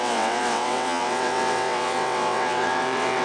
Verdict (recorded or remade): remade